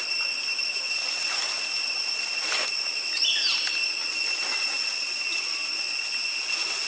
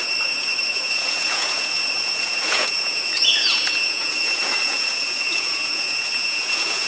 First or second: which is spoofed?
second